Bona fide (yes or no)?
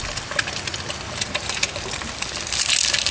yes